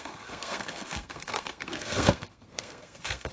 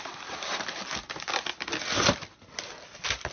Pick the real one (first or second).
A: second